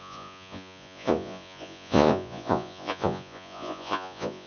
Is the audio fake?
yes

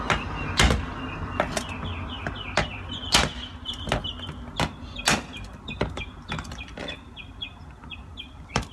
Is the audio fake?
no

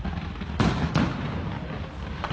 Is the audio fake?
no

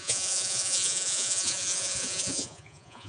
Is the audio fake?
yes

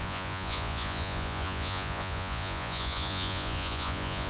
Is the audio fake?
yes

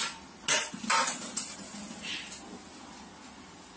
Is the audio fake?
no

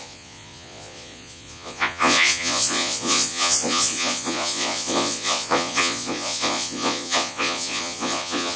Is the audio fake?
yes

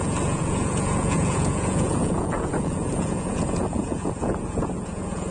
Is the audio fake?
yes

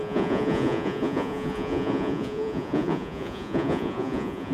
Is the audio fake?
yes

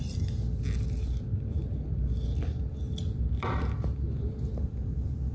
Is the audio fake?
no